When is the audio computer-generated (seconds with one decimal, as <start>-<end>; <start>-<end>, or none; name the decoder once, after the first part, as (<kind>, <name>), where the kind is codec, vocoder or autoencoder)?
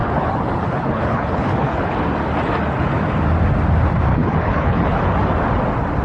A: 0.0-1.9 (codec, HILCodec); 4.1-5.0